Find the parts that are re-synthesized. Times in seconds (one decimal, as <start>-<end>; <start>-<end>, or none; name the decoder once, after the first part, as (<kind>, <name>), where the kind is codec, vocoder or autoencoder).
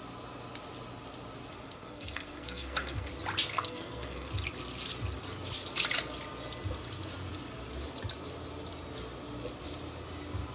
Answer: 1.5-3.1 (codec, SNAC); 3.5-4.3